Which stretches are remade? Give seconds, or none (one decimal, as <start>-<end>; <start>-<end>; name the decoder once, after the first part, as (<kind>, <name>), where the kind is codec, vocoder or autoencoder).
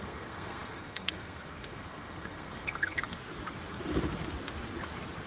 0.0-3.2 (codec, SNAC)